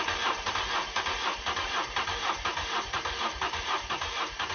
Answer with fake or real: fake